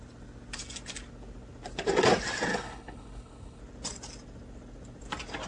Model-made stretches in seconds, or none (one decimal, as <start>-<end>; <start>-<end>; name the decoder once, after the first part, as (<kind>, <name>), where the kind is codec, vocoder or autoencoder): 2.5-3.6 (codec, HILCodec)